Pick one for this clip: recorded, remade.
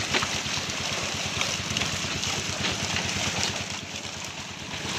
remade